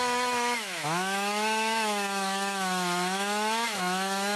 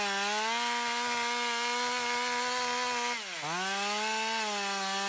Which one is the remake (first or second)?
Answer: first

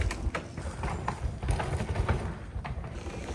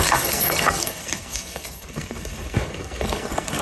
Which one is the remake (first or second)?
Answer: second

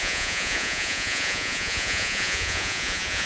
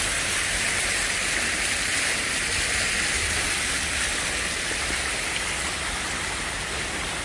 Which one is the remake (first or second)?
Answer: first